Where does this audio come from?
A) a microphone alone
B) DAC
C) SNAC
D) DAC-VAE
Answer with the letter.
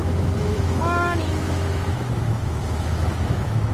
D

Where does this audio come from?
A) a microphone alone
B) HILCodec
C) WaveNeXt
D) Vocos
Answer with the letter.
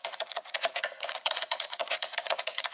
D